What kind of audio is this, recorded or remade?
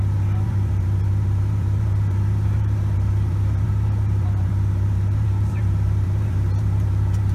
remade